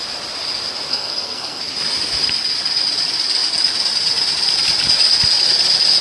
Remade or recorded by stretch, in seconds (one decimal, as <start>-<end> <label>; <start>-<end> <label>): 0.0-0.9 recorded; 0.9-1.6 remade; 1.6-6.0 recorded